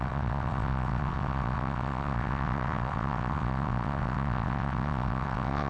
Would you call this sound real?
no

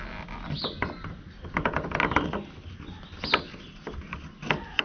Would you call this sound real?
yes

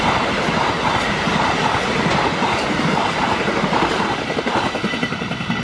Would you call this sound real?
yes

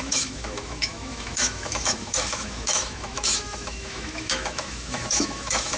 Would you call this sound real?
no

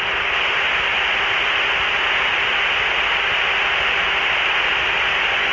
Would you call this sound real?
yes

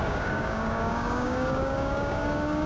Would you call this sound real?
no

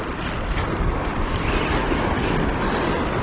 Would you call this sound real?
yes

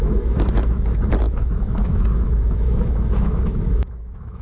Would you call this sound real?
no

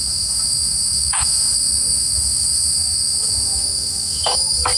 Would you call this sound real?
no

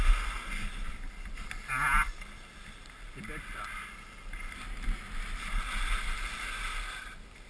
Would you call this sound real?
yes